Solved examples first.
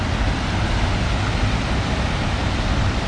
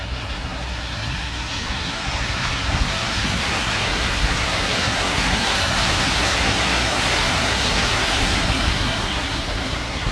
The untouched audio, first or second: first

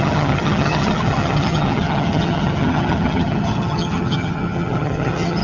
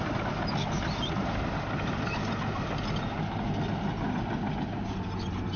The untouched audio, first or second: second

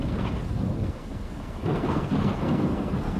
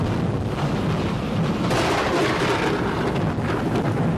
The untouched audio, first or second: second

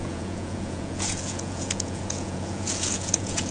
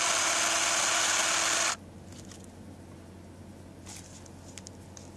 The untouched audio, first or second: second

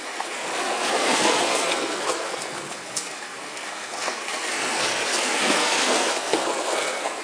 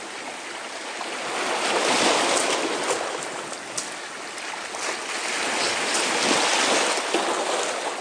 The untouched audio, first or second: second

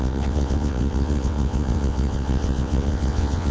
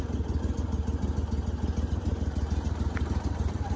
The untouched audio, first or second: second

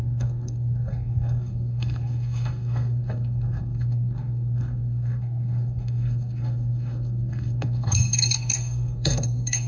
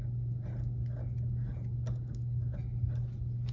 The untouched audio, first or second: second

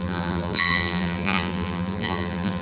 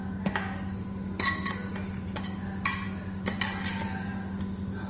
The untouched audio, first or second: second